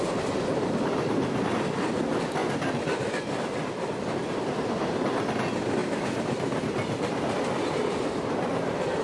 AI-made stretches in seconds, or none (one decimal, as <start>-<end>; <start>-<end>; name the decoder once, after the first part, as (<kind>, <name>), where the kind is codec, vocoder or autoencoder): 5.8-6.6 (vocoder, BigVGAN v2)